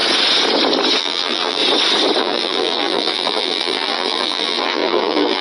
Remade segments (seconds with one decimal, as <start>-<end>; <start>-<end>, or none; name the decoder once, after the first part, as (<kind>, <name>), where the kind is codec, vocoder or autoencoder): 1.0-1.6 (vocoder, BigVGAN v2); 2.2-5.4